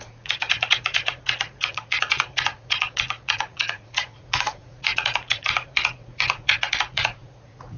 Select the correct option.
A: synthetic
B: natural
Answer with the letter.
A